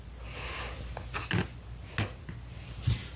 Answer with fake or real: real